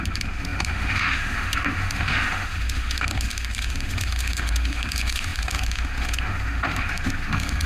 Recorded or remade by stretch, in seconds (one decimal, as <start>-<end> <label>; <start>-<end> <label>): 0.0-7.7 remade

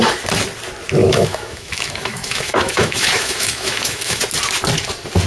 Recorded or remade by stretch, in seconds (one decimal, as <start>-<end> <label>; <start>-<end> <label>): 0.0-1.0 recorded; 1.0-4.2 remade; 4.2-5.3 recorded

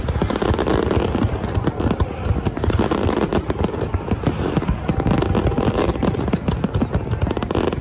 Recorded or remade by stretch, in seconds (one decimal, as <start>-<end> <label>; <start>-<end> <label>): 0.0-7.8 recorded

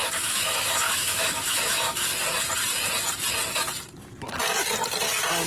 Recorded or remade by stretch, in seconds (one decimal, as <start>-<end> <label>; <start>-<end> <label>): 0.0-2.1 remade; 2.1-5.5 recorded